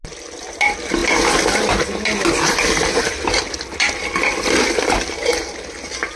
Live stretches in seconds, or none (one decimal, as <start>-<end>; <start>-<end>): 0.0-6.2